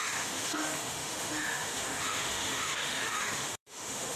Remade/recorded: remade